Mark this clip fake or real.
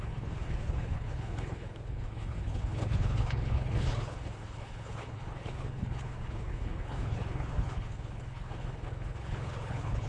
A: fake